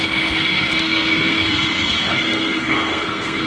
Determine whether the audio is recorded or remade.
remade